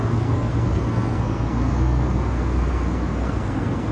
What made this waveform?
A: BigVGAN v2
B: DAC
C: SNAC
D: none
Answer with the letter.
C